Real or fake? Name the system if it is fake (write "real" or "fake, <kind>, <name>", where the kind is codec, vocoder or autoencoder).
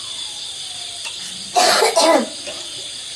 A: real